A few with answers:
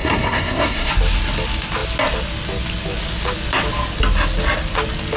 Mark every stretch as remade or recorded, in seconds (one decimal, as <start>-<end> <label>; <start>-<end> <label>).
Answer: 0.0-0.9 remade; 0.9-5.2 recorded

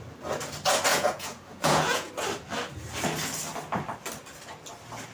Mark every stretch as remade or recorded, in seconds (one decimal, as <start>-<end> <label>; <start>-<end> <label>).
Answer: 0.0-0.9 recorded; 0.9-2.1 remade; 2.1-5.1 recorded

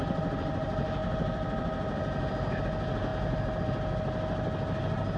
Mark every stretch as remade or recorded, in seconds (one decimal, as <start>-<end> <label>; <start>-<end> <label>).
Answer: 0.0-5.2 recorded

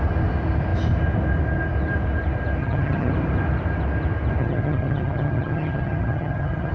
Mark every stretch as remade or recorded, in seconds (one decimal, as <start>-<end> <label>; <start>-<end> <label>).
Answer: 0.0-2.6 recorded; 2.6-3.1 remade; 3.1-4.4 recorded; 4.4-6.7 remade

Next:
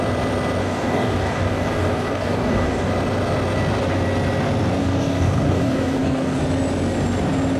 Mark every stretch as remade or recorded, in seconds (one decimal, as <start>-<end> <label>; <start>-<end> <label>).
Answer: 0.0-0.6 recorded; 0.6-2.9 remade; 2.9-4.8 recorded; 4.8-6.4 remade; 6.4-7.6 recorded

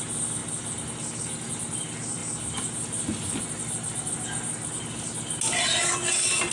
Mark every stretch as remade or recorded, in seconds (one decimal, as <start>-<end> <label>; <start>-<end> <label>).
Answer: 0.0-6.5 recorded